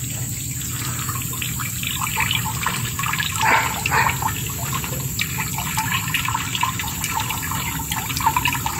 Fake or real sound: real